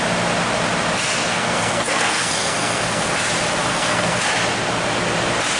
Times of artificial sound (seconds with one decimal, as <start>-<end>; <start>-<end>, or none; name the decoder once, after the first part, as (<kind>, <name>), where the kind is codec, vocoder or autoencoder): 1.3-3.1 (codec, SNAC); 3.7-4.2